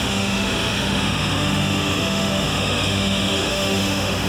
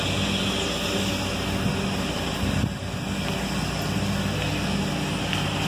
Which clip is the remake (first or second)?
first